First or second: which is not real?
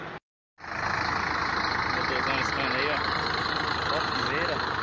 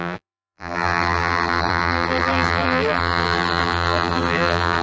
second